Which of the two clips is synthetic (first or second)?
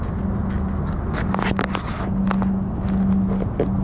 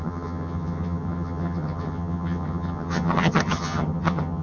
second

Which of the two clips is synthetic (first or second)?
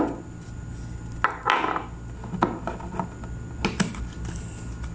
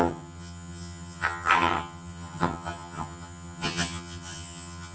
second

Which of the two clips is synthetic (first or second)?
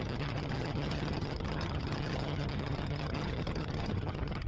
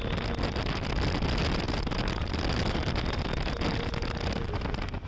first